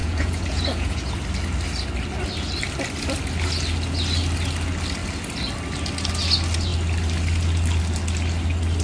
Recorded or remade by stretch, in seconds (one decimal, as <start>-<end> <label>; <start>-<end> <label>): 0.0-1.1 remade; 1.1-8.8 recorded